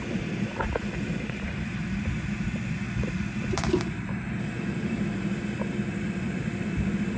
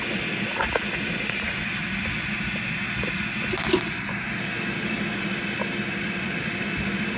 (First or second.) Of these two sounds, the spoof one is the first